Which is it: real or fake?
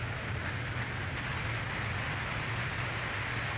real